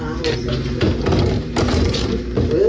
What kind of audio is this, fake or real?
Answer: real